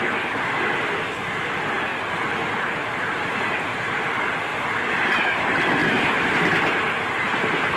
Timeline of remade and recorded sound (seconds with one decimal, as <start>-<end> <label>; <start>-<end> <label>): 0.0-7.8 recorded